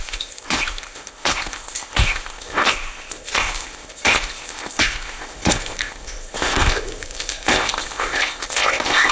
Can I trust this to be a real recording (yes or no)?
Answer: no